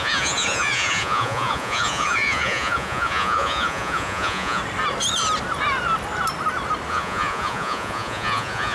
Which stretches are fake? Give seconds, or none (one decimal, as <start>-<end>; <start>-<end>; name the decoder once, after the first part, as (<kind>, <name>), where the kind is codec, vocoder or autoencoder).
0.0-4.6 (vocoder, Vocos); 6.9-8.7